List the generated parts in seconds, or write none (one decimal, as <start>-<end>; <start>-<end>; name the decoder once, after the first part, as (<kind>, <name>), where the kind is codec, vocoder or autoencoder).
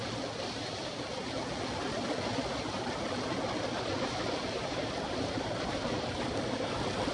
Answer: 4.7-6.4 (vocoder, BigVGAN v2)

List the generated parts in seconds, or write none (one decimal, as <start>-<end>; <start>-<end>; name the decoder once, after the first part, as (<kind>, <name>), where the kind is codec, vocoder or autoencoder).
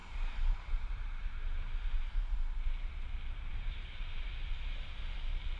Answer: 0.0-1.8 (vocoder, BigVGAN v2); 3.5-4.3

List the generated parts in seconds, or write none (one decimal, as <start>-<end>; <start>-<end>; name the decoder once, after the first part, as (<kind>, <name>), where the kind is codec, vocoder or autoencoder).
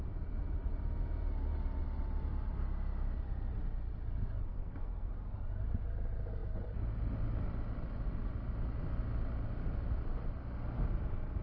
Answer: 4.5-5.1 (codec, SNAC)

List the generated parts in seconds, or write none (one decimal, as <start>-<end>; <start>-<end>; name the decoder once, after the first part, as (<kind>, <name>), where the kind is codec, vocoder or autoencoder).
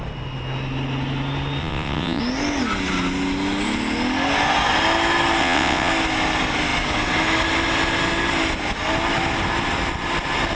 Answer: 1.6-2.2 (vocoder, WaveNeXt); 5.4-5.9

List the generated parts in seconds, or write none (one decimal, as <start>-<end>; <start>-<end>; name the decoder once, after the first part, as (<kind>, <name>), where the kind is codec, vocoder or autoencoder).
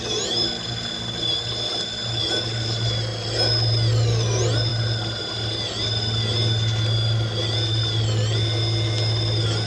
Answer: none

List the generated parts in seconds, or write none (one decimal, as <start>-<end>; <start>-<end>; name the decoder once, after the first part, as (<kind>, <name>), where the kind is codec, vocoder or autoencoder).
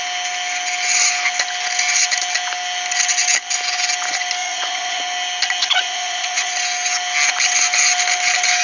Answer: 4.4-5.0 (vocoder, Vocos); 5.6-6.5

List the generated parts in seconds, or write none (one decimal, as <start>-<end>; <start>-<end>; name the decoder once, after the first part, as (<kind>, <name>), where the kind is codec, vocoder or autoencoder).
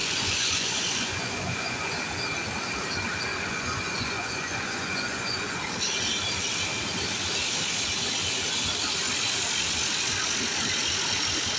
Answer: 0.0-2.0 (vocoder, Vocos); 3.3-5.6